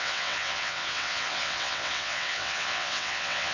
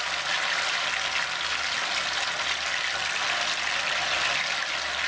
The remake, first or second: first